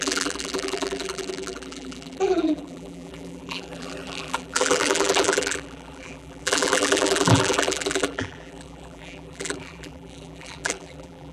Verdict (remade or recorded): remade